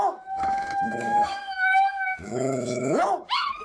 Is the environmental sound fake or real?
fake